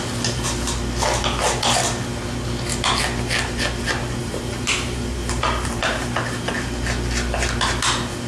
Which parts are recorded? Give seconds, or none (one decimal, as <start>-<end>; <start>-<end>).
0.0-4.2; 6.5-8.3